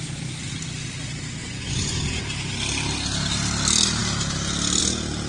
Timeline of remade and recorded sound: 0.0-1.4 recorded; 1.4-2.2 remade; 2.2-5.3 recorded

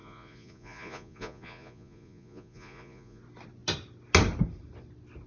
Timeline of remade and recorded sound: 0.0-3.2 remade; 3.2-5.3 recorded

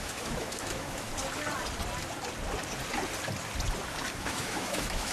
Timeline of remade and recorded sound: 0.0-1.1 remade; 1.1-4.2 recorded; 4.2-5.1 remade